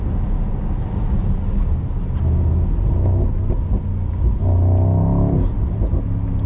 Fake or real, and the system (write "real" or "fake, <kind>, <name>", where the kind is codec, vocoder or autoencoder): real